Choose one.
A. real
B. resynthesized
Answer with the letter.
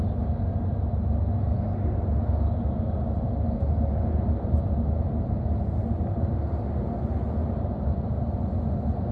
A